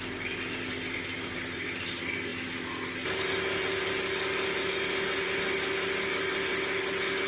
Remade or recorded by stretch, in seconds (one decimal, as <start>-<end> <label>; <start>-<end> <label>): 0.0-7.3 recorded